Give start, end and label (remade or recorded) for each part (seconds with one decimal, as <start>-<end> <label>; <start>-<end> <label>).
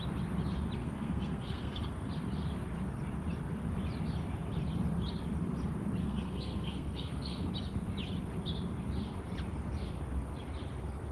0.0-0.8 recorded; 0.8-2.1 remade; 2.1-6.0 recorded; 6.0-7.5 remade; 7.5-11.1 recorded